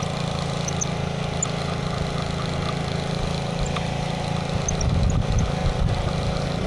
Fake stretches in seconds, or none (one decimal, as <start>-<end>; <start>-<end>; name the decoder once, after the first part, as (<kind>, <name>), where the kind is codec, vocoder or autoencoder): none